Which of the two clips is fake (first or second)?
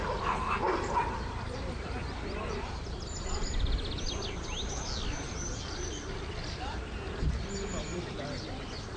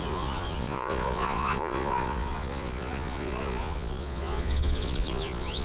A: second